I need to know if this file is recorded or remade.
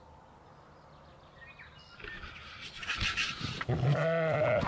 recorded